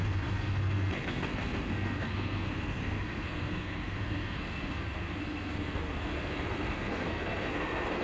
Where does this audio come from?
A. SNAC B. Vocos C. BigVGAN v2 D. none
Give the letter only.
A